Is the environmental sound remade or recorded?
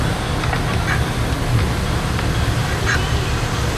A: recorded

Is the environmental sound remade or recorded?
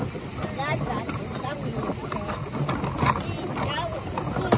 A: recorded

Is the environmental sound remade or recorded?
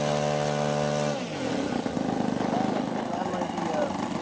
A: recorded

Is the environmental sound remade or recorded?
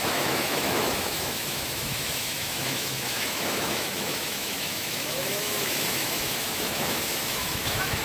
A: remade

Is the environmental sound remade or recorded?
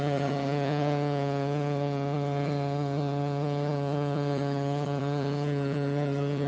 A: remade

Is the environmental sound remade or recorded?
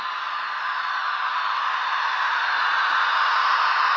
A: recorded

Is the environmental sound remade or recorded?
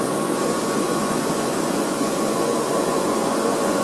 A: remade